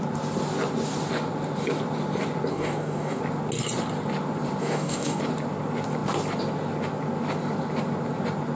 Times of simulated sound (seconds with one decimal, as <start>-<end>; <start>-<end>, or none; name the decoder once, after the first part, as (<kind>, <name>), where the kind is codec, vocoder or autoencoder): 2.5-3.2 (codec, DAC); 4.6-5.2